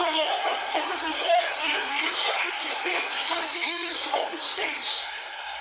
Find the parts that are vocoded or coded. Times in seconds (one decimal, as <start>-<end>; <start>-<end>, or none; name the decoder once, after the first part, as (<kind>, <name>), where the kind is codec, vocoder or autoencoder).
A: 0.0-5.6 (codec, SNAC)